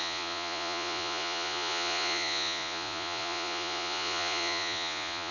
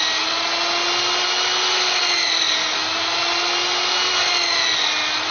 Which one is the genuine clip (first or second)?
second